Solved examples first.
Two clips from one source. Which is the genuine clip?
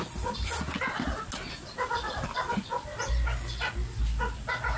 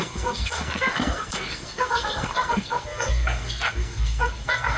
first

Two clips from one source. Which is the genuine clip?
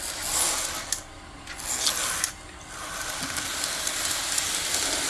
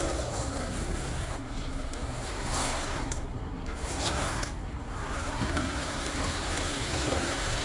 first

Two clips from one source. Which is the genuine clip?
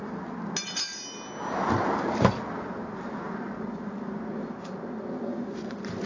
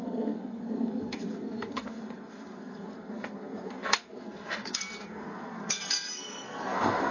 first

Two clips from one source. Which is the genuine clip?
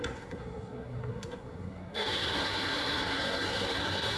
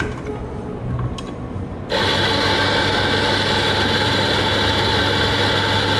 second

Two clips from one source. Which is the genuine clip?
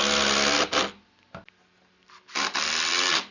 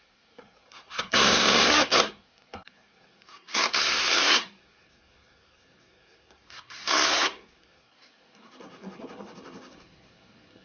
first